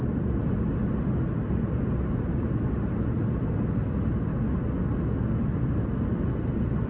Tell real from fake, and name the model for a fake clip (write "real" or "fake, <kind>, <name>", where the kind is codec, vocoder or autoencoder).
real